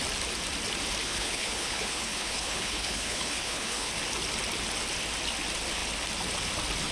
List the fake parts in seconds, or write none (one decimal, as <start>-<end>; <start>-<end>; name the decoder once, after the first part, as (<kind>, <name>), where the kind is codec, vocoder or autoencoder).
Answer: 1.0-3.9 (codec, HILCodec)